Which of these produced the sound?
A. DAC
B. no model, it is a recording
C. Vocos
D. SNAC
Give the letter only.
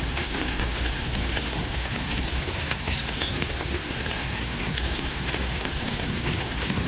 D